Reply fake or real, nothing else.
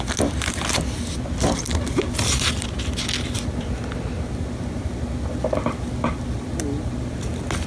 real